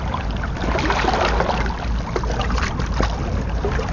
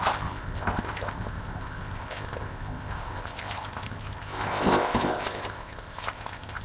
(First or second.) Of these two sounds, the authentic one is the first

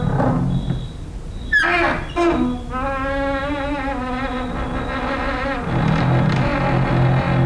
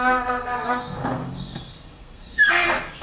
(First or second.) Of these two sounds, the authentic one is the first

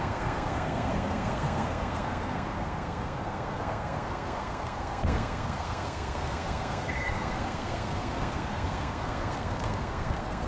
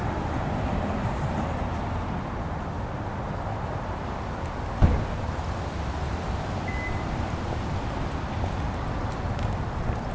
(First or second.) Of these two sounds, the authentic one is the second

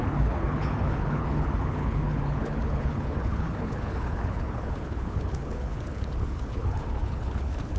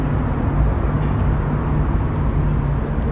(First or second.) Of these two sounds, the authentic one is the second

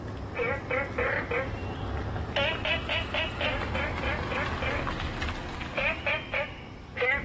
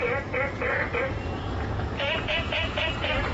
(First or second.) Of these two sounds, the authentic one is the first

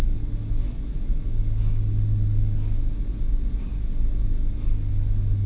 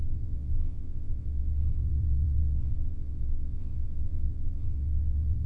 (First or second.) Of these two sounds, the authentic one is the first